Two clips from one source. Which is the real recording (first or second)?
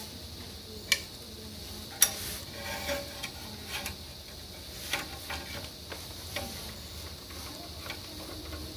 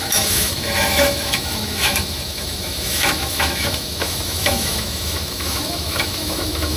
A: first